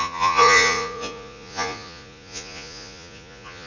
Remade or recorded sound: remade